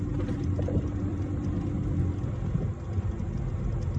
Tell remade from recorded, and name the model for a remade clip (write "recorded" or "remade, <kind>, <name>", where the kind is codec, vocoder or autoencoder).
recorded